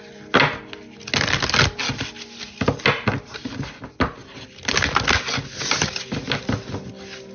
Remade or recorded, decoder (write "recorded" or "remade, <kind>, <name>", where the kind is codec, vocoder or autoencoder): recorded